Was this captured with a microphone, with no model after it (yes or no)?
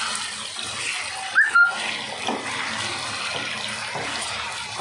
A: yes